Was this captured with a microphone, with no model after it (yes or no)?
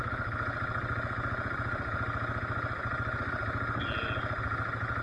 yes